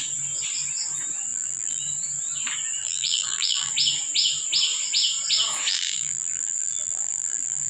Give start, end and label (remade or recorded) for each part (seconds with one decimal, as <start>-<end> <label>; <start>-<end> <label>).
0.0-1.3 recorded; 1.3-1.8 remade; 1.8-2.8 recorded; 2.8-3.7 remade; 3.7-5.7 recorded; 5.7-7.7 remade